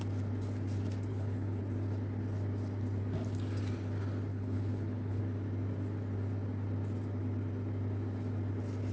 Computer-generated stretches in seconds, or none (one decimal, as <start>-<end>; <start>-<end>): 1.1-1.6; 4.3-5.2